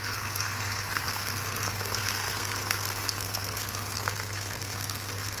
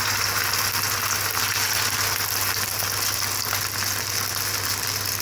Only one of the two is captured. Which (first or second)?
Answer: second